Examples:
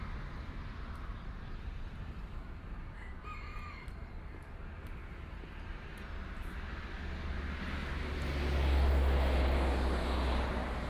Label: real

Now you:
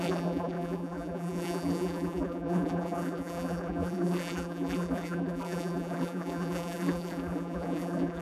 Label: fake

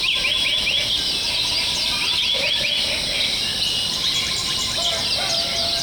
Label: real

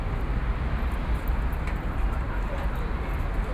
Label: real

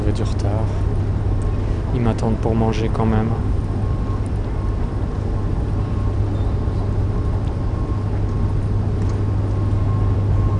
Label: real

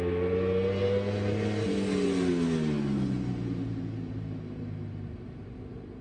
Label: real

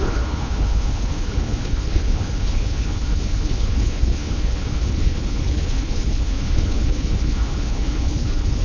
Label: fake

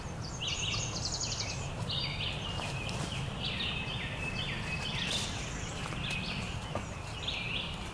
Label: real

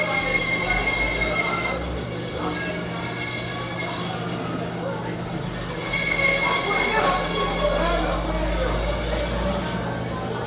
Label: real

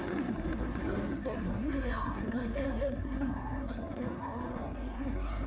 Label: fake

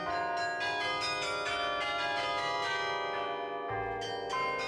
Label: real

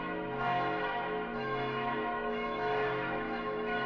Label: fake